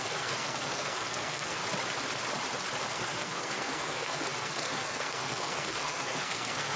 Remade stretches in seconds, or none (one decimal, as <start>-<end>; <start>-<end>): 0.0-1.6; 2.9-6.8